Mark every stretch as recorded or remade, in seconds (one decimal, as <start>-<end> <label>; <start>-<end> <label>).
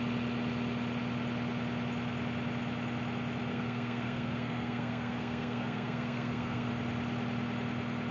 0.0-3.5 recorded; 3.5-6.7 remade; 6.7-8.1 recorded